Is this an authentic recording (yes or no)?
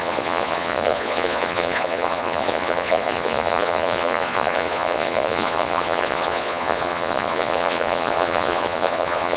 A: no